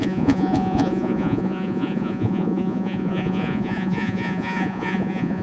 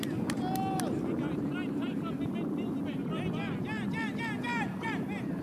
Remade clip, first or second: first